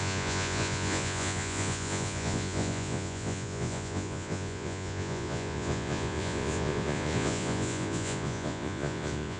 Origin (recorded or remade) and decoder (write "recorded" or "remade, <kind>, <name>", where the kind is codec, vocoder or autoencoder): remade, vocoder, Vocos